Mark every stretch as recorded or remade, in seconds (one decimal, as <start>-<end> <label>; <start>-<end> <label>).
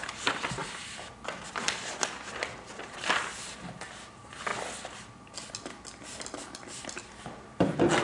0.0-0.6 recorded; 0.6-1.1 remade; 1.1-8.0 recorded